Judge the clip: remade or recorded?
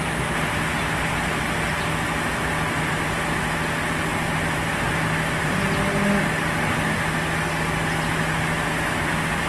recorded